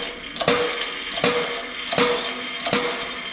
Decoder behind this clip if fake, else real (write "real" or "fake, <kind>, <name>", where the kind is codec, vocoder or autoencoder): real